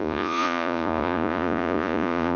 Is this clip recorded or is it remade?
remade